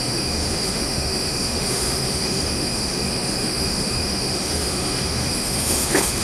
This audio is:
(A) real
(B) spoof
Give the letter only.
B